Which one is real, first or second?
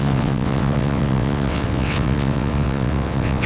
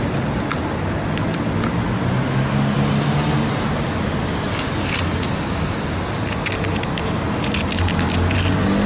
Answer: second